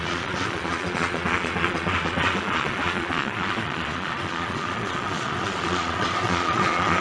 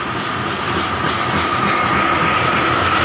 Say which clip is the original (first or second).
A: second